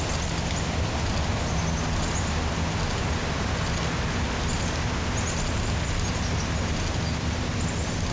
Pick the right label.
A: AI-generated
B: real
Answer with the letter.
B